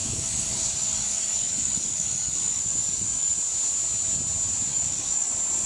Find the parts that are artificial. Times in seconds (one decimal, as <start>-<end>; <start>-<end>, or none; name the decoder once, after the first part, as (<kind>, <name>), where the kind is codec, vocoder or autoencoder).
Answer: 0.0-3.4 (codec, DAC); 4.7-5.3